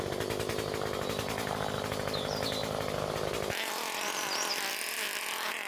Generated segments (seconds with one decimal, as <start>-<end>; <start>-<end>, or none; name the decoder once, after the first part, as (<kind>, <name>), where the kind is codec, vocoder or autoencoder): none